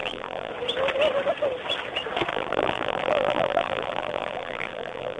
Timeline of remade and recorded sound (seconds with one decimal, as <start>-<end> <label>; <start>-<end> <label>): 0.0-0.5 remade; 0.5-2.3 recorded; 2.3-5.2 remade